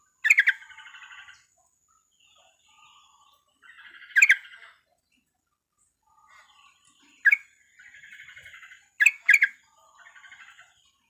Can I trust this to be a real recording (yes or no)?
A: yes